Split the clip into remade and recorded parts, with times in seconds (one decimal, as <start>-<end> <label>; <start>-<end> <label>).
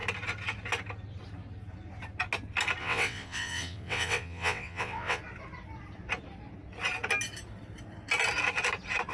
0.0-2.8 recorded; 2.8-5.2 remade; 5.2-9.1 recorded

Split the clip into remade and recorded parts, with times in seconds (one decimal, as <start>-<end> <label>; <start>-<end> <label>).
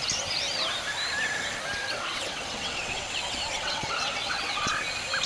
0.0-1.8 recorded; 1.8-4.7 remade; 4.7-5.3 recorded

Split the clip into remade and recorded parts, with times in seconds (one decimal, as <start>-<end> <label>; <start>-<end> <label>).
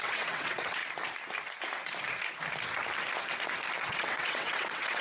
0.0-0.8 remade; 0.8-3.8 recorded; 3.8-5.0 remade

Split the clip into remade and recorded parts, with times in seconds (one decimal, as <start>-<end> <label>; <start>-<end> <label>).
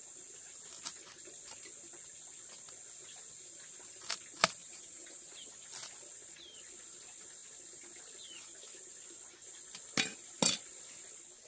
0.0-4.6 recorded; 4.6-5.5 remade; 5.5-11.5 recorded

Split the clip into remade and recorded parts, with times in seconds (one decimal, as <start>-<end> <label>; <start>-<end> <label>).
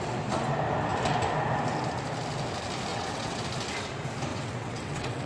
0.0-2.9 recorded; 2.9-3.4 remade; 3.4-4.3 recorded; 4.3-5.3 remade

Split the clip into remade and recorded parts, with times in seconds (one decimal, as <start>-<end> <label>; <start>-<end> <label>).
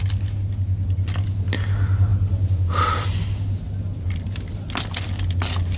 0.0-5.8 recorded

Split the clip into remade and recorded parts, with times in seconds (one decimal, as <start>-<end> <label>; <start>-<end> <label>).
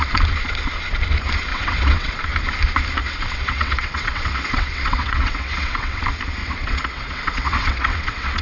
0.0-1.5 recorded; 1.5-2.1 remade; 2.1-3.0 recorded; 3.0-6.0 remade; 6.0-6.4 recorded; 6.4-8.4 remade